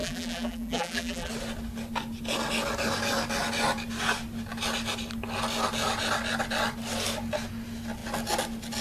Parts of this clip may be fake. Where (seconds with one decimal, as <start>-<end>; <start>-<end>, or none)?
0.0-1.3